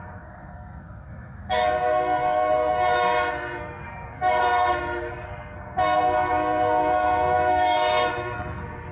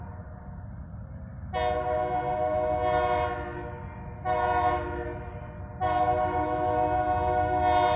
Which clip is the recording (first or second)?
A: second